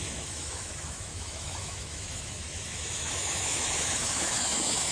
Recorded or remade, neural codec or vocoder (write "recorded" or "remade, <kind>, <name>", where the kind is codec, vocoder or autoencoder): remade, autoencoder, DAC-VAE